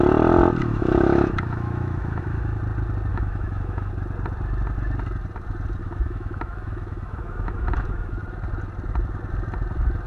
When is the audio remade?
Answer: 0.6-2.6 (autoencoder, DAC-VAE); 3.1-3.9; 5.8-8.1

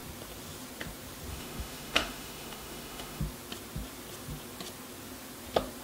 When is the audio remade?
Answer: 1.3-3.2 (autoencoder, DAC-VAE)

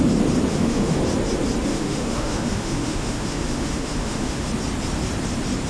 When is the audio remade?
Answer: 0.5-1.0 (autoencoder, DAC-VAE); 1.7-4.5

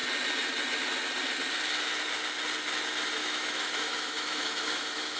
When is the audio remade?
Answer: 3.2-5.2 (autoencoder, DAC-VAE)

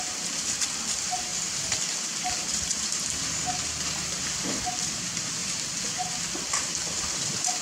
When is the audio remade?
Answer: none

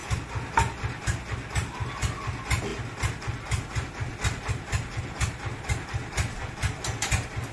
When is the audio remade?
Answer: none

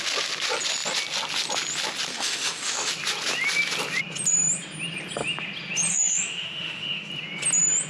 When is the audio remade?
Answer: 2.1-2.9 (autoencoder, DAC-VAE); 5.9-7.1